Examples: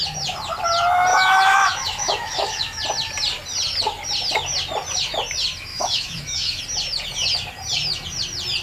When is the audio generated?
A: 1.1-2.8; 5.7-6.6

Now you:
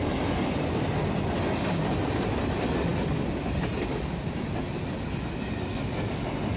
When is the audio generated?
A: none

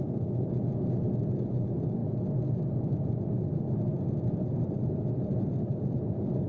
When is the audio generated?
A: none